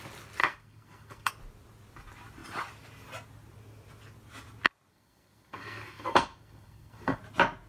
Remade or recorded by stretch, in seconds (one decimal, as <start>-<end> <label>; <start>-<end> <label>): 0.0-0.4 recorded; 0.4-1.3 remade; 1.3-4.9 recorded; 4.9-7.2 remade; 7.2-7.7 recorded